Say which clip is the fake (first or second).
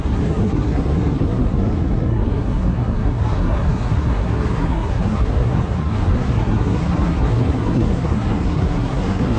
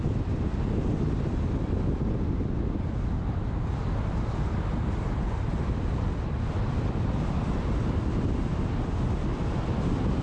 first